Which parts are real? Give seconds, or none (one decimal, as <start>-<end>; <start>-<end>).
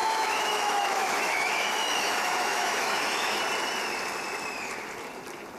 3.4-5.6